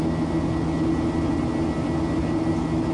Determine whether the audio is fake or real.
real